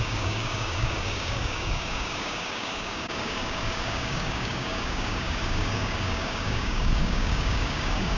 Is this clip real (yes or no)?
no